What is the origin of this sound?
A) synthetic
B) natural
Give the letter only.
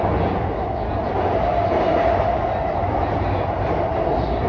B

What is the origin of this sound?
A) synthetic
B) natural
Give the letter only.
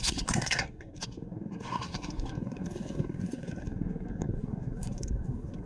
A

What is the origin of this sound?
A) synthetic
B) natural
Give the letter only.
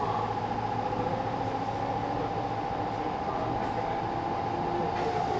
B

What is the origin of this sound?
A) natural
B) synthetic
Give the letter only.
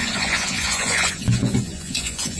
B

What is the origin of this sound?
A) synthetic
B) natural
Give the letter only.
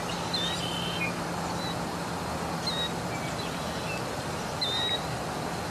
B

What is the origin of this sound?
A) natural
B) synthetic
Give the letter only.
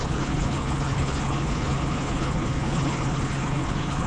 B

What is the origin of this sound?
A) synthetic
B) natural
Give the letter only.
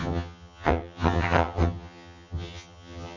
A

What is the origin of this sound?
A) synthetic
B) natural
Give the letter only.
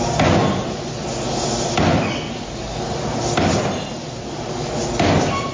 B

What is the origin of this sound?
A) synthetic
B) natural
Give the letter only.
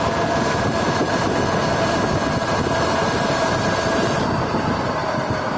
B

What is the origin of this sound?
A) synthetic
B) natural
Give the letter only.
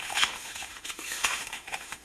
A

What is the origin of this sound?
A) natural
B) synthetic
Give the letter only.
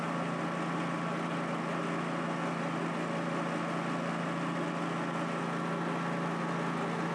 A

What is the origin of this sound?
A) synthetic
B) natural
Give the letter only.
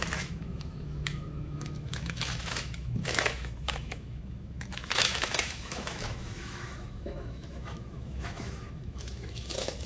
A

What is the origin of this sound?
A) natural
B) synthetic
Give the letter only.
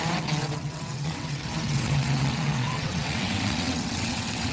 B